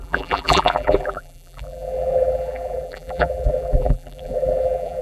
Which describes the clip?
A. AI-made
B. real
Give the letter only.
A